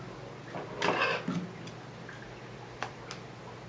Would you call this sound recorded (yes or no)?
yes